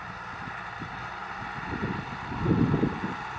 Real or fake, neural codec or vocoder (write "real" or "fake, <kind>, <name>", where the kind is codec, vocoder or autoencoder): real